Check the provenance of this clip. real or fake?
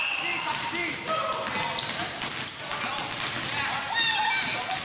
real